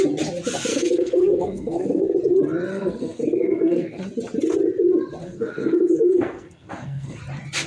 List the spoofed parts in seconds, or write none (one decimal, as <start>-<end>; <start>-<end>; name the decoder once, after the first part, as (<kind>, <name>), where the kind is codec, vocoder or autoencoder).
0.7-2.1 (codec, SNAC); 2.7-4.0; 5.2-7.2